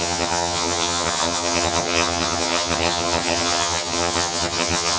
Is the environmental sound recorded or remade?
remade